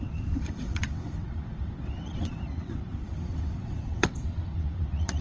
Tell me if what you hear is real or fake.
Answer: fake